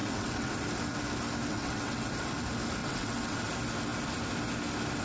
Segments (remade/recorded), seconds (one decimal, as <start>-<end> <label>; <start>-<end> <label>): 0.0-0.5 remade; 0.5-1.5 recorded; 1.5-2.1 remade; 2.1-2.8 recorded; 2.8-3.4 remade; 3.4-5.0 recorded